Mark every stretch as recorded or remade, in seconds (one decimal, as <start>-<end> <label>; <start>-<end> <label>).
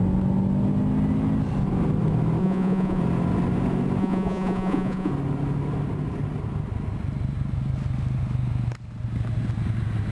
0.0-2.4 recorded; 2.4-3.0 remade; 3.0-4.0 recorded; 4.0-5.1 remade; 5.1-10.1 recorded